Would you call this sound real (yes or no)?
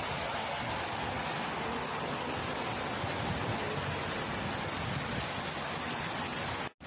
yes